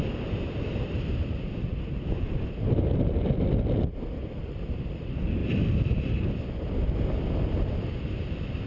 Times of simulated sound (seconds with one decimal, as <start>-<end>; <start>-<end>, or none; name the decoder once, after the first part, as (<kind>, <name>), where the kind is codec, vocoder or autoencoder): none